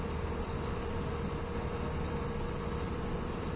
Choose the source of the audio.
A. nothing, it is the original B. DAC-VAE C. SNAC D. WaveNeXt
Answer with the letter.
A